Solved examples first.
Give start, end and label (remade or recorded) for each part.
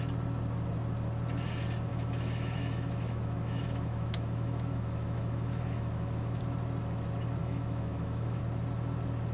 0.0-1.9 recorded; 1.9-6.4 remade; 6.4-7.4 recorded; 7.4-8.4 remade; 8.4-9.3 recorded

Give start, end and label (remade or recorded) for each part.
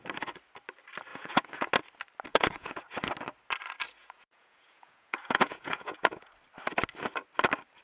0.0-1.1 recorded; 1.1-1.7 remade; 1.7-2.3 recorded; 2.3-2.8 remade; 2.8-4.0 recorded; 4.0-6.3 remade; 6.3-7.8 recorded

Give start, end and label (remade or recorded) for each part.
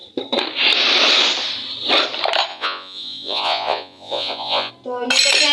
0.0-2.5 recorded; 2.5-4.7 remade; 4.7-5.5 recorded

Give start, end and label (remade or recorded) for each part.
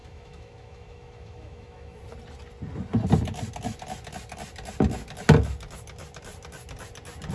0.0-2.0 remade; 2.0-7.3 recorded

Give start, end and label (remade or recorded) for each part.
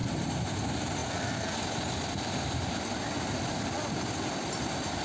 0.0-0.6 remade; 0.6-5.0 recorded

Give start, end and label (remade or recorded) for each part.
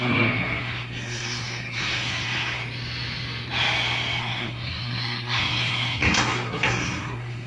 0.0-2.6 remade; 2.6-4.2 recorded; 4.2-7.5 remade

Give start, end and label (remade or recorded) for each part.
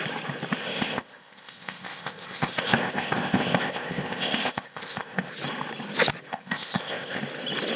0.0-0.6 recorded; 0.6-5.3 remade; 5.3-6.3 recorded; 6.3-7.2 remade; 7.2-7.8 recorded